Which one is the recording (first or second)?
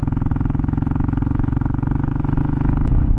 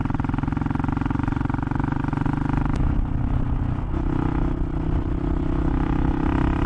second